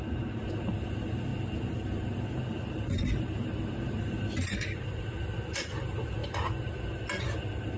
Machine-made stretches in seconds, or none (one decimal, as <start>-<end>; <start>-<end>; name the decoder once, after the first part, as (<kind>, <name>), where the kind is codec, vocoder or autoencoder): none